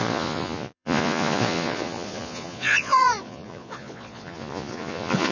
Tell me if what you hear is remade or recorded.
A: remade